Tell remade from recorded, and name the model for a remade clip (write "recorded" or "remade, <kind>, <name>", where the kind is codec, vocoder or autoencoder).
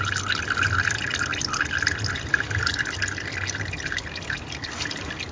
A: recorded